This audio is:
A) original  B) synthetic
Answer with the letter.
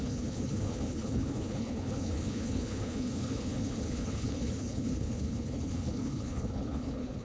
B